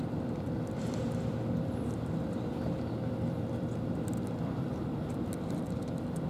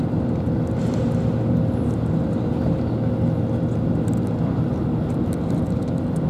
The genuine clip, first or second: second